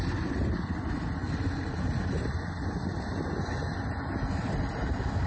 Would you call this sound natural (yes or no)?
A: yes